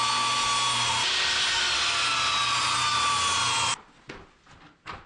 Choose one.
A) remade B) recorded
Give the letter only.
B